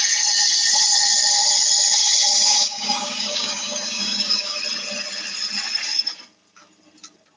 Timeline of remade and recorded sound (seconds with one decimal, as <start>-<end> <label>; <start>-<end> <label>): 0.0-2.3 recorded; 2.3-4.6 remade; 4.6-7.4 recorded